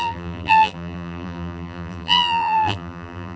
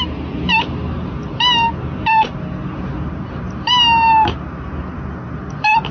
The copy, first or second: first